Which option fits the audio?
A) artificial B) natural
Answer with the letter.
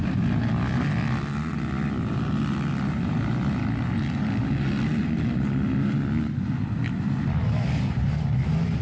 B